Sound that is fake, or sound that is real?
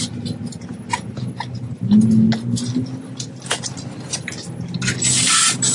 real